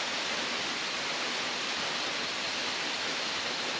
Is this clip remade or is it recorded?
recorded